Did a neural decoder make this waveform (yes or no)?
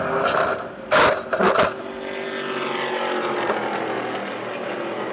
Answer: no